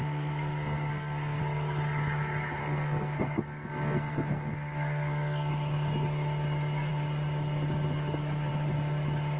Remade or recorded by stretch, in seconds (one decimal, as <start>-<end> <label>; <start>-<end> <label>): 0.0-1.4 remade; 1.4-2.6 recorded; 2.6-5.5 remade; 5.5-9.4 recorded